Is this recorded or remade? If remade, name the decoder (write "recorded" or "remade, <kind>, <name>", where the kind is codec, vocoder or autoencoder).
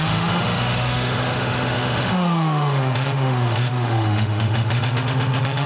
remade, autoencoder, DAC-VAE